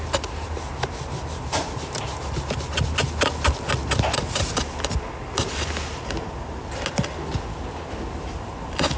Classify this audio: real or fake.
real